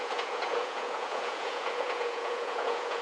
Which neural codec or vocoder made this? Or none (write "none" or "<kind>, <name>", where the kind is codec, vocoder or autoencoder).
vocoder, Vocos